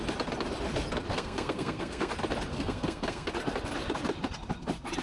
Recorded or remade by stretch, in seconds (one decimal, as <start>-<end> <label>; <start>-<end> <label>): 0.0-1.1 recorded; 1.1-2.1 remade; 2.1-2.5 recorded; 2.5-3.3 remade; 3.3-5.0 recorded